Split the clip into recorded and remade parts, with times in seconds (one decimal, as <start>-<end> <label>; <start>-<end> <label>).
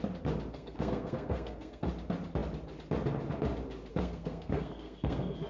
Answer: 0.0-0.5 recorded; 0.5-1.9 remade; 1.9-3.9 recorded; 3.9-5.5 remade